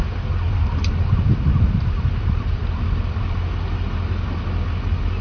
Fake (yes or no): no